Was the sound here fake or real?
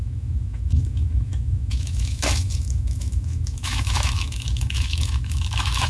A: fake